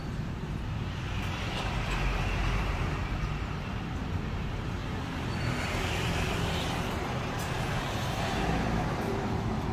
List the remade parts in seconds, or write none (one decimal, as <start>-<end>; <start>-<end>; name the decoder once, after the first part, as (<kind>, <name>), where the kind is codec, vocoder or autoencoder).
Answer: 0.0-3.0 (vocoder, BigVGAN v2); 3.8-9.7